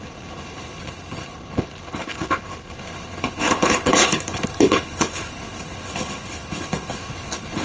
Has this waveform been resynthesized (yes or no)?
yes